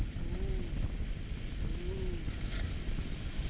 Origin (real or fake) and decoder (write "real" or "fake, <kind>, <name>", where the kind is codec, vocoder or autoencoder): real